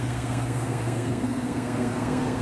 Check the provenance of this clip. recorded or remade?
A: remade